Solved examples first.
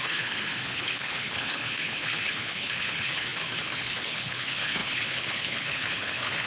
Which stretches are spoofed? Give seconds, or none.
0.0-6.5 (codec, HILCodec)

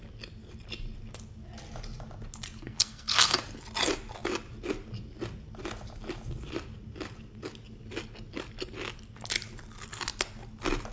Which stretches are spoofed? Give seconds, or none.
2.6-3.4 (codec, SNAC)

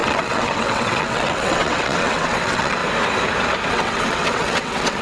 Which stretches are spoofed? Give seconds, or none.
0.0-2.8 (vocoder, WaveNeXt); 3.7-5.0